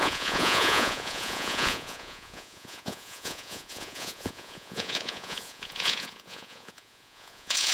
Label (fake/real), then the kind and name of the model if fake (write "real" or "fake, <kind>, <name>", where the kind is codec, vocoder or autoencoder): fake, vocoder, Vocos